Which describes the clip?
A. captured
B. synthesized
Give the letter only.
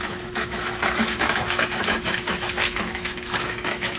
B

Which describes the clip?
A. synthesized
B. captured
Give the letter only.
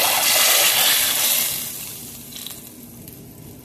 B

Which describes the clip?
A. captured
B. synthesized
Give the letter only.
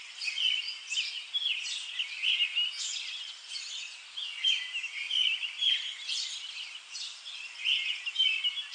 A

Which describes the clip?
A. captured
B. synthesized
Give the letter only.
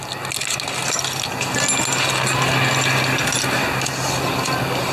A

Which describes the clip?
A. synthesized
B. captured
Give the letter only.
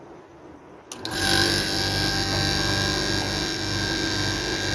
B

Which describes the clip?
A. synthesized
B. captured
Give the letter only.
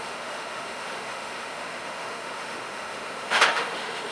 A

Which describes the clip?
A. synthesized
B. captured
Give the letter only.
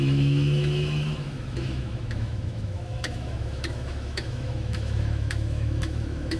A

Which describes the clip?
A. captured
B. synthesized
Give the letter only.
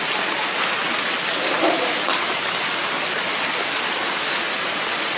A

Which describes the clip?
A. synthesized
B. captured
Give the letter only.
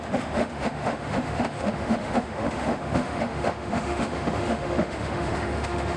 A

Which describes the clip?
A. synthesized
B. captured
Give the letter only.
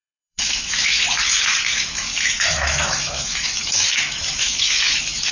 A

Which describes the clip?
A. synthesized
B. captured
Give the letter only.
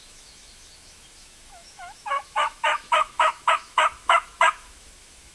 A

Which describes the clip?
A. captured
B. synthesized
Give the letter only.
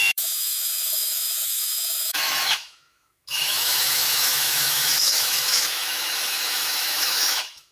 B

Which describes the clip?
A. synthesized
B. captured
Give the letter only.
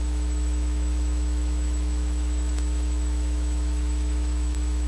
A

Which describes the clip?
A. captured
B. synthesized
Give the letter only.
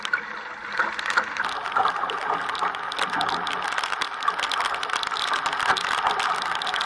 A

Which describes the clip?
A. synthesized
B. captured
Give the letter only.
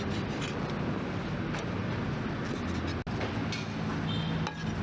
B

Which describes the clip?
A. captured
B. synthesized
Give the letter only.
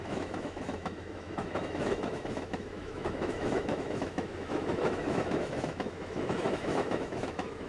B